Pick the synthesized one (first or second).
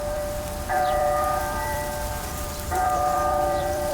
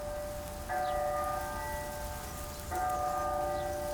first